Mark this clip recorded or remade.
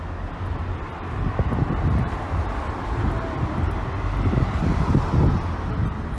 recorded